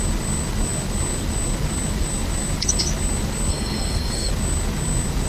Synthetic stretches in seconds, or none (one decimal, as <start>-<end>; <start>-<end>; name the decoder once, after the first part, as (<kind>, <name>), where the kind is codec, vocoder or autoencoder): 3.5-4.3 (codec, SNAC)